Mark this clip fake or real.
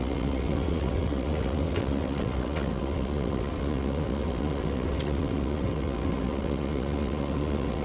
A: fake